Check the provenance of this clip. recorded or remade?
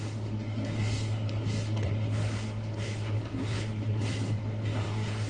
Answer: remade